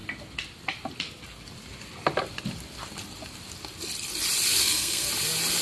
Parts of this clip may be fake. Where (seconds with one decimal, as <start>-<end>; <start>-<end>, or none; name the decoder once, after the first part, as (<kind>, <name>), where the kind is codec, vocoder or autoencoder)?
4.6-5.1 (codec, SNAC)

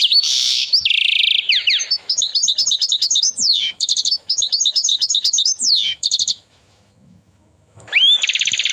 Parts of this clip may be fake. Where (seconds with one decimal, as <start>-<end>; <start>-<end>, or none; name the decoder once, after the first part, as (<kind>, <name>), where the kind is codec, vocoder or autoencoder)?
0.0-1.2 (autoencoder, DAC-VAE); 1.9-2.3; 2.9-8.7

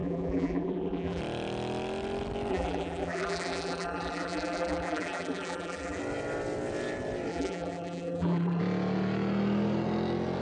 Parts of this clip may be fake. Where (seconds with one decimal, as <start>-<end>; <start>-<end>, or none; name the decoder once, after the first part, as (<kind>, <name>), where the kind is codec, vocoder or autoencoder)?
0.0-1.2 (vocoder, BigVGAN v2); 2.5-6.0; 7.3-8.6

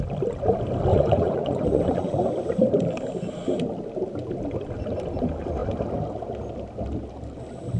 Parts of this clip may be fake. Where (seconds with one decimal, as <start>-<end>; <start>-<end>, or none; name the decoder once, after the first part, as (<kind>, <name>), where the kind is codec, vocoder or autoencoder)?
0.9-2.2 (vocoder, Vocos)

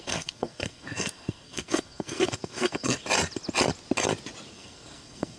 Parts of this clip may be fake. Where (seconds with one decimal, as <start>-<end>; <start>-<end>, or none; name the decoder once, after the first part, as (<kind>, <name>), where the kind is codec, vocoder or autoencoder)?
0.0-3.0 (codec, SNAC); 4.5-5.4

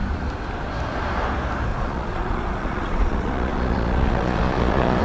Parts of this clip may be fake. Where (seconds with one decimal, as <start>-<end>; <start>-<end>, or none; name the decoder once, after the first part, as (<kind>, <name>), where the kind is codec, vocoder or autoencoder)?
1.7-5.0 (vocoder, Vocos)

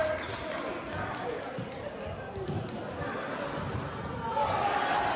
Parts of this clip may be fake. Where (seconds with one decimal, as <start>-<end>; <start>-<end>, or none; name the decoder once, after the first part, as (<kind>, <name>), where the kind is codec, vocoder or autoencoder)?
none

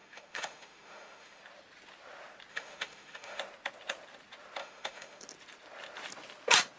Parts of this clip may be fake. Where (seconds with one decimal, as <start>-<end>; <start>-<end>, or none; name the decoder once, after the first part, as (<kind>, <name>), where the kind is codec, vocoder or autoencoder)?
0.0-1.4 (autoencoder, DAC-VAE); 2.5-3.4; 4.6-5.2